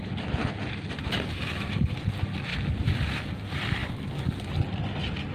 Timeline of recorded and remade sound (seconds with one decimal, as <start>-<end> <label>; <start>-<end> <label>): 0.0-5.3 recorded

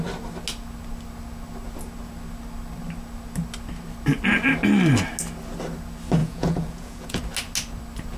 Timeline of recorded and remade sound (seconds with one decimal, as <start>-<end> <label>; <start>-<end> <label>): 0.0-6.2 recorded; 6.2-7.2 remade; 7.2-8.2 recorded

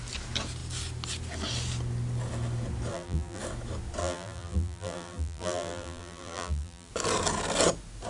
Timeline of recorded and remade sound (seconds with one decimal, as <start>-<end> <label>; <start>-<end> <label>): 0.0-2.9 recorded; 2.9-3.4 remade; 3.4-4.0 recorded; 4.0-6.9 remade; 6.9-8.1 recorded

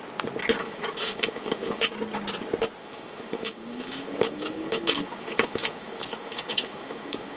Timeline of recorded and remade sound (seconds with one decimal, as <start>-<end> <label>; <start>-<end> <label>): 0.0-0.6 recorded; 0.6-1.9 remade; 1.9-2.8 recorded; 2.8-7.4 remade

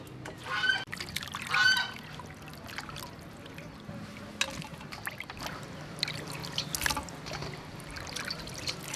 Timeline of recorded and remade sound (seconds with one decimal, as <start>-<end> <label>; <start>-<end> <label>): 0.0-9.0 recorded

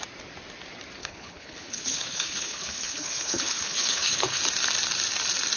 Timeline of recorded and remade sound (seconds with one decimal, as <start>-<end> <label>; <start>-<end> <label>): 0.0-1.0 recorded; 1.0-4.4 remade; 4.4-5.6 recorded

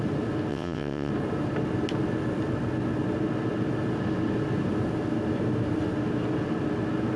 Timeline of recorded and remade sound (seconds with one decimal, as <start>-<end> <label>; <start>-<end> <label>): 0.0-0.5 recorded; 0.5-1.1 remade; 1.1-7.2 recorded